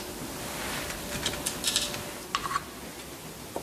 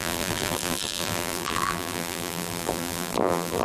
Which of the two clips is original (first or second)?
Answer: first